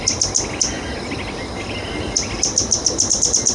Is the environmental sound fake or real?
real